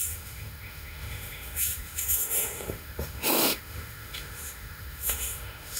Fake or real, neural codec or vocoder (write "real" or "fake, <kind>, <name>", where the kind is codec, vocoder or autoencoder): fake, autoencoder, DAC-VAE